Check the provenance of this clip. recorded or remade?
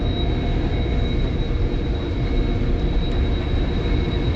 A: recorded